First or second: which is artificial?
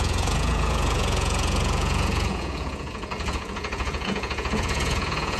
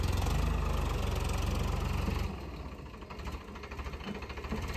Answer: first